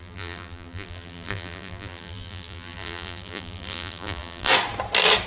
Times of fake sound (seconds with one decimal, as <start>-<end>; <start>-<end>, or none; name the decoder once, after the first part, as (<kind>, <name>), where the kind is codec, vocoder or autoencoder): 0.0-4.5 (vocoder, BigVGAN v2)